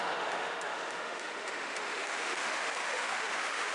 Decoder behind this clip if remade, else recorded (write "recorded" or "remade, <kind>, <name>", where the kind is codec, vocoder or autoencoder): remade, autoencoder, DAC-VAE